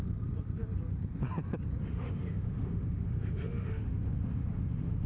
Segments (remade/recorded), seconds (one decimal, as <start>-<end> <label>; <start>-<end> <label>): 0.0-1.8 recorded; 1.8-5.1 remade